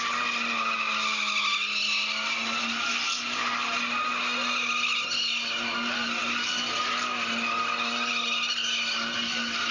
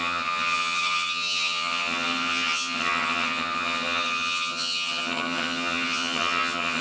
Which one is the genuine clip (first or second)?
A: first